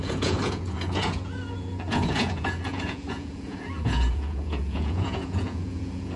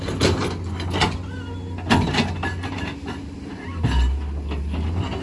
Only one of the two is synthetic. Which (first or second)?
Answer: first